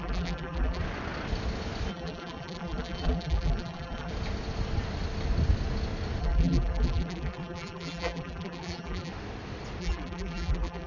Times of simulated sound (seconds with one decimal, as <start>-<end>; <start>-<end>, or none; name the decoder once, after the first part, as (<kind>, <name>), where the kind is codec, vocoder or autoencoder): 0.0-0.8 (vocoder, BigVGAN v2); 1.9-4.1; 6.2-9.1; 9.8-10.9